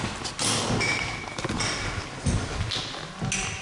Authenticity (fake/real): real